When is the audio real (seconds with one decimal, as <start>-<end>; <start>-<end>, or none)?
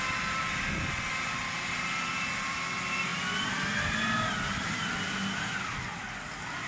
0.0-6.7